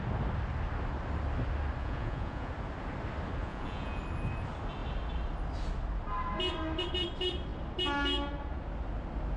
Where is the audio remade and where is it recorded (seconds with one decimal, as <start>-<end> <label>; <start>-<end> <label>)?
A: 0.0-1.8 recorded; 1.8-2.5 remade; 2.5-3.4 recorded; 3.4-4.0 remade; 4.0-9.4 recorded